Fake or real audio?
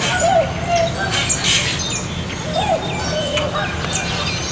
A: real